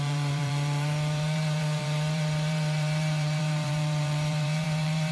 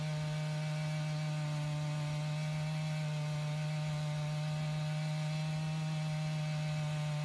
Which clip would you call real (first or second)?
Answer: second